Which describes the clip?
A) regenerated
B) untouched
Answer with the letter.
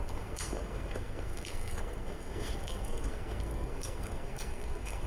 A